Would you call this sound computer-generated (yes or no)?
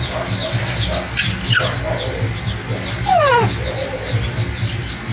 no